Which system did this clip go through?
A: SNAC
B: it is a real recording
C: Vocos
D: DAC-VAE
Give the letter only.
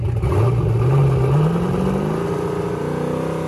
B